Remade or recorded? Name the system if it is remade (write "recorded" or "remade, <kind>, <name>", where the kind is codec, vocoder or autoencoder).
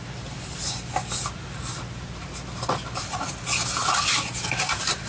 recorded